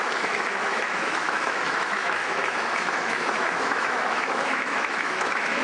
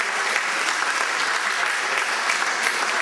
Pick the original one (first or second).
second